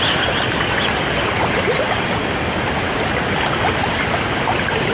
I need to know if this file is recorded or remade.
recorded